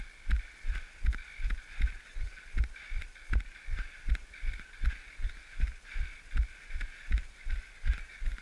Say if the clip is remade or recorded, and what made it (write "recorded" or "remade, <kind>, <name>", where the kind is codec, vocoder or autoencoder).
recorded